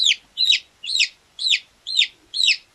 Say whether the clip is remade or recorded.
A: remade